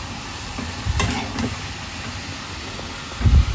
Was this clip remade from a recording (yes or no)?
no